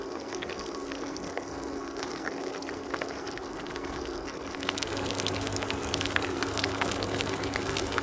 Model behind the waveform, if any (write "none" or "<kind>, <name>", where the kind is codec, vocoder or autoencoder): codec, SNAC